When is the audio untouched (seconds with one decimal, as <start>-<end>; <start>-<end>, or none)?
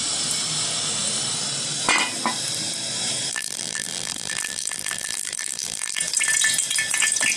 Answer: 0.0-3.3; 6.0-7.4